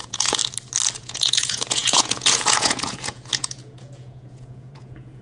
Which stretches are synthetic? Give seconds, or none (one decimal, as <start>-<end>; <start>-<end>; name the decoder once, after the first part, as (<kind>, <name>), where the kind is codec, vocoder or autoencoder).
0.0-0.4 (vocoder, Vocos); 1.0-5.2